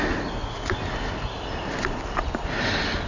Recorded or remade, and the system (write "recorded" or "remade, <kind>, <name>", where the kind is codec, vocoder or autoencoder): recorded